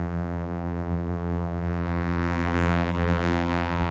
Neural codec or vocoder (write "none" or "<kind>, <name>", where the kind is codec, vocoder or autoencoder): vocoder, BigVGAN v2